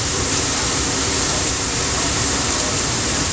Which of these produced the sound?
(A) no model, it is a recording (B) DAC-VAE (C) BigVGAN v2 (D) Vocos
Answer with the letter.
C